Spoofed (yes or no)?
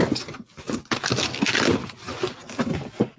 no